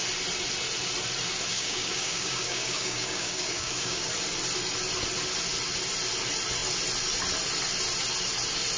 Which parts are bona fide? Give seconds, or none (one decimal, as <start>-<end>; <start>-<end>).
0.0-1.5; 4.1-8.8